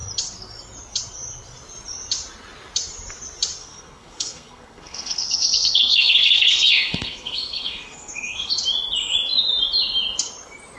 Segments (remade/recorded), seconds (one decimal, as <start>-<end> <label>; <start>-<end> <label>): 0.0-3.6 recorded; 3.6-8.5 remade; 8.5-10.8 recorded